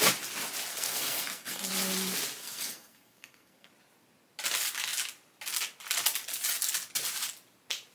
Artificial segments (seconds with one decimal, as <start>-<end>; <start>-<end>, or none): 0.7-1.7; 2.4-3.7